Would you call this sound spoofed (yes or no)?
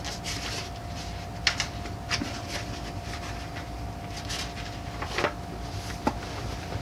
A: no